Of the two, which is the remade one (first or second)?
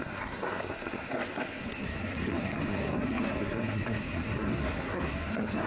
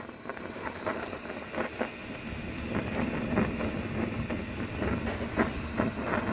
first